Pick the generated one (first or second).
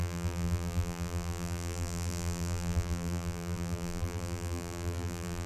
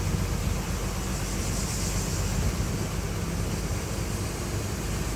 first